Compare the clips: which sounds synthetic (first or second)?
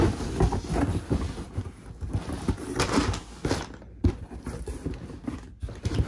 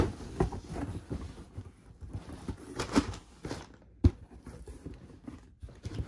second